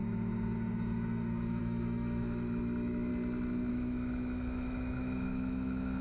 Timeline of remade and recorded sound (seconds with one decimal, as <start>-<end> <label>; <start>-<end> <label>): 0.0-1.6 recorded; 1.6-3.1 remade; 3.1-3.7 recorded; 3.7-6.0 remade